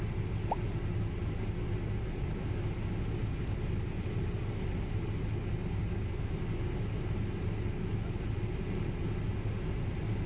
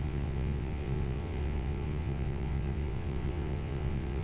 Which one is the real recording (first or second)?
first